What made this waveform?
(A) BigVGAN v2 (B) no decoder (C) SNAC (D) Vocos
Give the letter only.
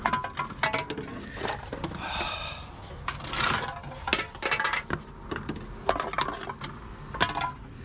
B